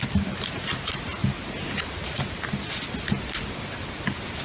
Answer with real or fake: real